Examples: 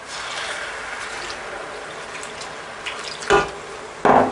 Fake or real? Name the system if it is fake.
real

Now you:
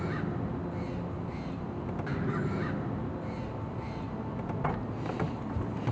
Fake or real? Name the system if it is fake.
real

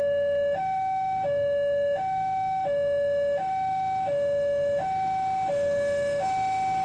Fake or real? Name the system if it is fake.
fake, autoencoder, DAC-VAE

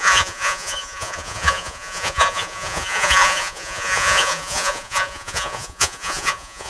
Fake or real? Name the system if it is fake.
fake, vocoder, Vocos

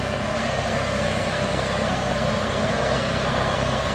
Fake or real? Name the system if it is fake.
fake, codec, SNAC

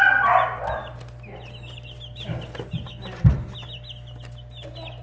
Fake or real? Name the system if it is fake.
real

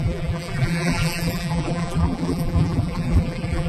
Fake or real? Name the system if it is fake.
fake, vocoder, BigVGAN v2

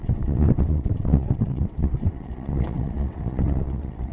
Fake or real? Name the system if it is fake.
fake, vocoder, WaveNeXt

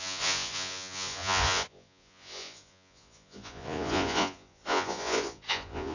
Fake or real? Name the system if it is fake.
fake, vocoder, Vocos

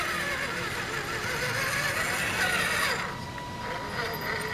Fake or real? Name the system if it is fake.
real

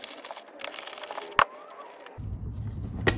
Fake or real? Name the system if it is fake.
real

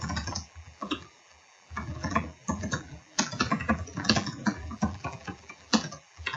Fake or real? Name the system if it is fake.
fake, vocoder, BigVGAN v2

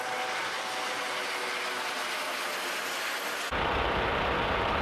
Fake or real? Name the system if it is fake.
real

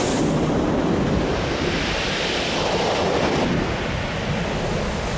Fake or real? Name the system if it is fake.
real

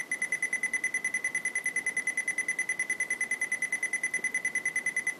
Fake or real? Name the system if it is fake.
real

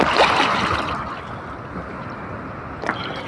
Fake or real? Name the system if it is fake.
real